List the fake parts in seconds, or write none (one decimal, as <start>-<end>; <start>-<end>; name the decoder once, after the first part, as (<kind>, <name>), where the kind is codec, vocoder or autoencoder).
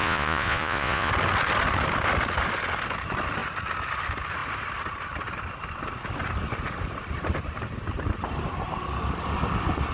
0.0-1.1 (vocoder, Vocos)